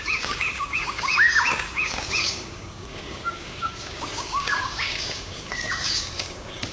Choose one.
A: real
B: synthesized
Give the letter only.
B